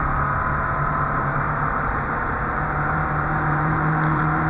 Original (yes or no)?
no